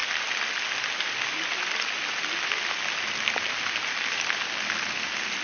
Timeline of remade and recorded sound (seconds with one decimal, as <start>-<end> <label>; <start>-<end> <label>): 0.0-5.4 recorded